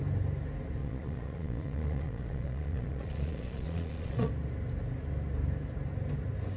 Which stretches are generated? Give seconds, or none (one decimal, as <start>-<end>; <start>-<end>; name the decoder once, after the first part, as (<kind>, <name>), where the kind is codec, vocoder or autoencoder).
0.8-4.3 (vocoder, Vocos)